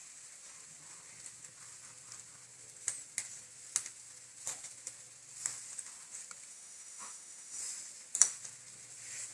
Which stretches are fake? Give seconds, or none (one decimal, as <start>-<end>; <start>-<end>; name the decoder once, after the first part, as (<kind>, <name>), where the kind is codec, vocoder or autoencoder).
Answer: 6.5-7.6 (autoencoder, DAC-VAE)